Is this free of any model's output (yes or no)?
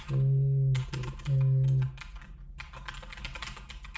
yes